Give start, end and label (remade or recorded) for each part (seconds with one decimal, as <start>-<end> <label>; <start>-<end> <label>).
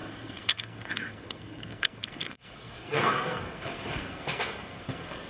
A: 0.0-5.3 remade